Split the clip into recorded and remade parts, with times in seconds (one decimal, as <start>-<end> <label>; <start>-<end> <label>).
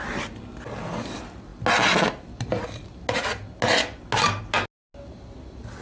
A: 0.0-5.8 recorded